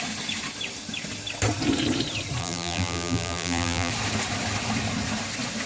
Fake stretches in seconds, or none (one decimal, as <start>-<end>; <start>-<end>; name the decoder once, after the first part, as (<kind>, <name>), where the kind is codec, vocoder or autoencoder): 2.4-3.9 (vocoder, BigVGAN v2)